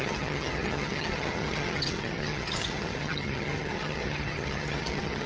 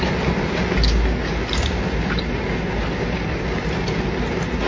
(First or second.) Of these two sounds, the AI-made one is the first